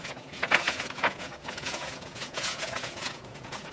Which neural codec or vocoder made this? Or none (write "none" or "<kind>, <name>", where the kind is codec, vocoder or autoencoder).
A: vocoder, Vocos